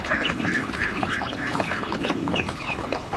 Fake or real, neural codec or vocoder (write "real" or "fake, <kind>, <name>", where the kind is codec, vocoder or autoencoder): fake, codec, HILCodec